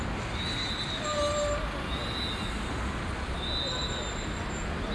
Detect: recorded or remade recorded